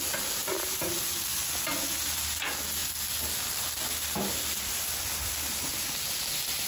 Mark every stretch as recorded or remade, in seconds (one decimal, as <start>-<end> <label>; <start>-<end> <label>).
0.0-6.7 recorded